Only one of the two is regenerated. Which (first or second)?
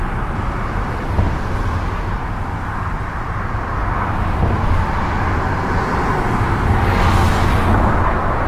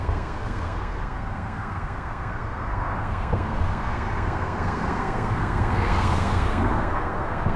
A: second